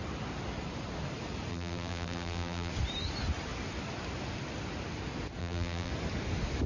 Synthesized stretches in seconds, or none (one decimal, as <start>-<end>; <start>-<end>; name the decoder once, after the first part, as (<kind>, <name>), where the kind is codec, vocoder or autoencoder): 1.5-2.7 (vocoder, BigVGAN v2); 5.4-5.9